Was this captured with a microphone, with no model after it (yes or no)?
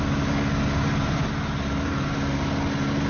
yes